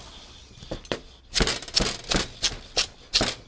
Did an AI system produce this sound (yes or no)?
no